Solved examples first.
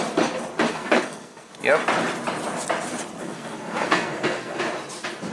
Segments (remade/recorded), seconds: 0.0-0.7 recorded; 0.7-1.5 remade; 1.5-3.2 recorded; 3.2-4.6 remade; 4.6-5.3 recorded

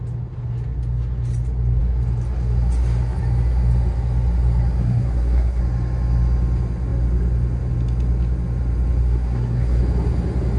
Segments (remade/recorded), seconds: 0.0-4.8 recorded; 4.8-5.6 remade; 5.6-9.0 recorded; 9.0-9.8 remade; 9.8-10.6 recorded

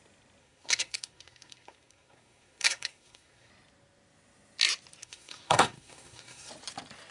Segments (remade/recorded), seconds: 0.0-0.4 recorded; 0.4-3.5 remade; 3.5-5.0 recorded; 5.0-6.5 remade; 6.5-7.1 recorded

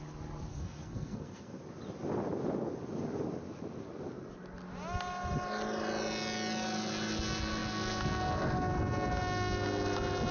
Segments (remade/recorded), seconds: 0.0-0.5 recorded; 0.5-1.6 remade; 1.6-10.3 recorded